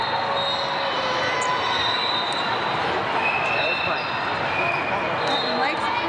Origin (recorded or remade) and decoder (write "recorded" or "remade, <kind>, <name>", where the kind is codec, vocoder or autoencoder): recorded